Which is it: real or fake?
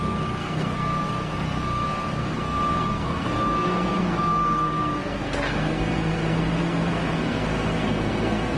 fake